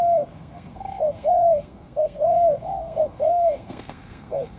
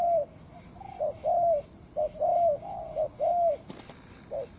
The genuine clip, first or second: second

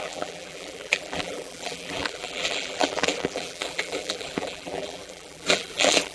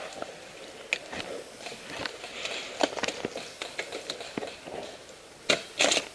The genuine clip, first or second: second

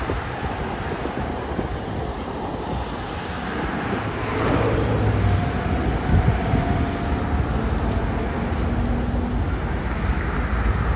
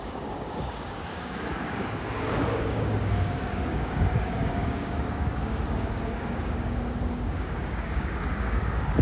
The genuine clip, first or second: first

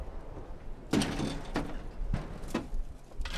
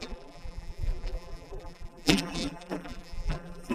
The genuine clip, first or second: first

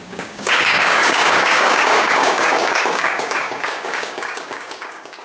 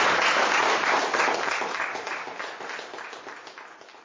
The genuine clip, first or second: second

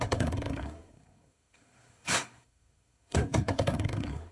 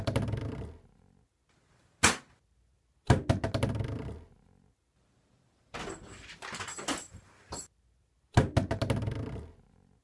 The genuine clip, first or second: second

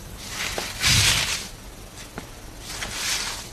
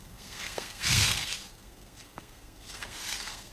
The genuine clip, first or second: first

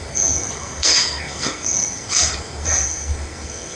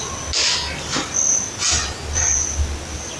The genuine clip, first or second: second